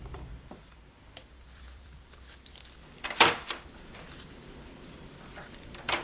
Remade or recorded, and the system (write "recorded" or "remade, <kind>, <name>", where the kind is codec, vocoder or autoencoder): remade, vocoder, BigVGAN v2